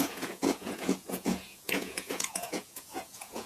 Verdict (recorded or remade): remade